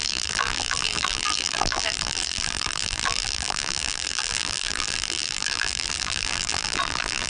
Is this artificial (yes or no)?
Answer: yes